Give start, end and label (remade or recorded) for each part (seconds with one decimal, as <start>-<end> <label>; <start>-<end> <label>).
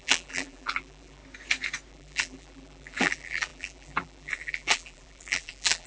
0.0-1.2 remade; 1.2-1.9 recorded; 1.9-5.9 remade